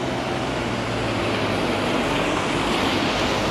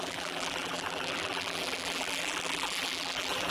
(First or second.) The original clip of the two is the first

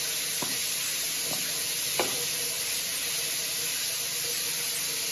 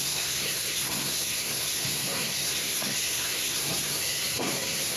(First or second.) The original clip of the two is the first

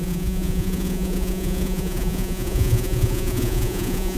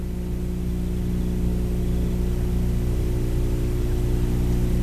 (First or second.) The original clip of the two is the second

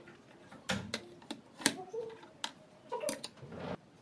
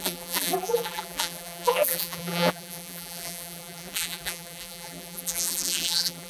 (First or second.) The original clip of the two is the first